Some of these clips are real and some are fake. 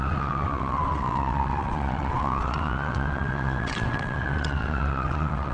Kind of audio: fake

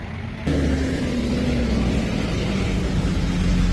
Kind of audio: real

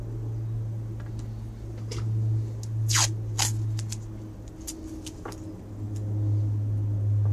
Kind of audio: real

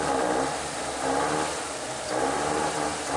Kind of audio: real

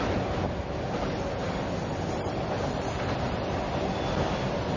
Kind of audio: real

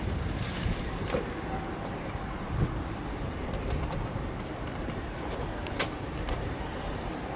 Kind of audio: fake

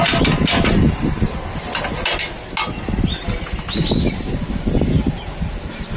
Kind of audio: real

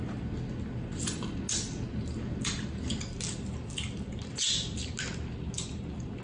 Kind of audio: real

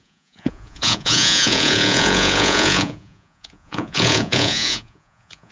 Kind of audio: fake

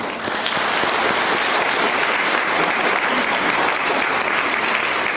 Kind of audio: real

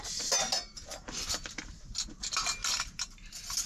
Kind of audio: real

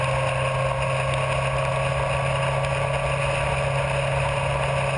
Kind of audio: real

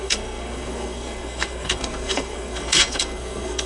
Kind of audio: fake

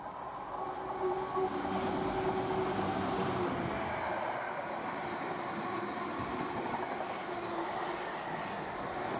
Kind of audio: real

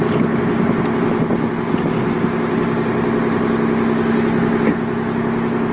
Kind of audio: real